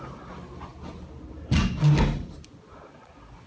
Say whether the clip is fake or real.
real